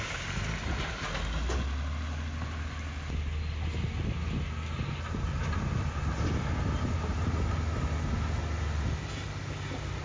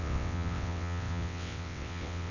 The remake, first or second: second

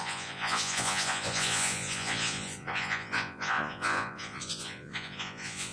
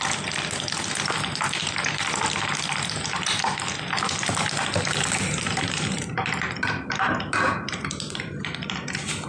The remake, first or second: first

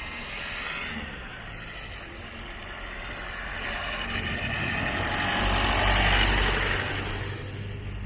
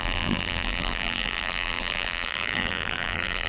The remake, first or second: second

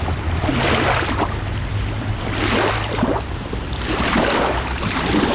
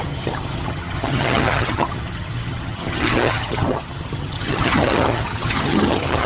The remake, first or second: second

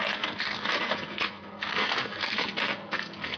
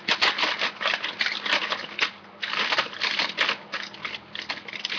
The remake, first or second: first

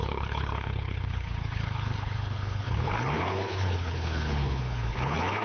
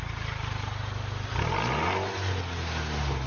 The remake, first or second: first